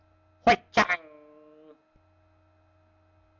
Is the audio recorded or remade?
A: recorded